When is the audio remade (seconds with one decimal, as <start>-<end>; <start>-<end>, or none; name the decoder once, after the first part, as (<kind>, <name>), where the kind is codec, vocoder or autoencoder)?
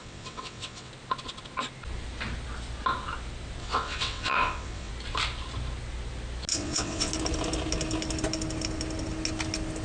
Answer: 0.0-0.9 (vocoder, WaveNeXt); 3.6-4.9; 6.5-7.1